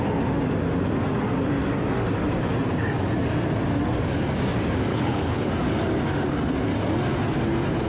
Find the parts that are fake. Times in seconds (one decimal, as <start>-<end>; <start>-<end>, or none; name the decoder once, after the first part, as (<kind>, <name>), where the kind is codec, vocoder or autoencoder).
4.9-5.5 (codec, HILCodec)